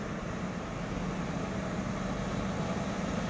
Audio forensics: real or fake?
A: real